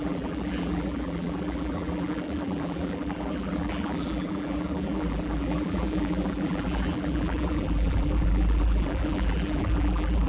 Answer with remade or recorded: remade